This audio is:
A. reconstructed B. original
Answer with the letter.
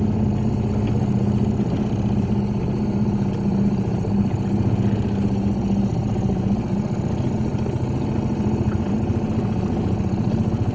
B